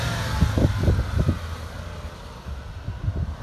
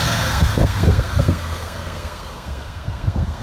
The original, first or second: first